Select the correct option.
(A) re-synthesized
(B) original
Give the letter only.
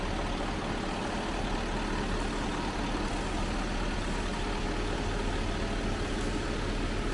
B